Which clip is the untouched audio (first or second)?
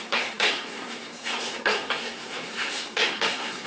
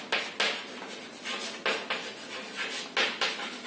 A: second